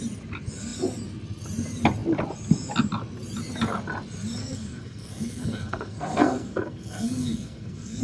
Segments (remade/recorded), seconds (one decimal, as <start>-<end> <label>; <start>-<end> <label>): 0.0-4.4 recorded; 4.4-8.0 remade